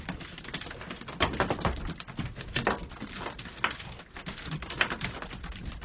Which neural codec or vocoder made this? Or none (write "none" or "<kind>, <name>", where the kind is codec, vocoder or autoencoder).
none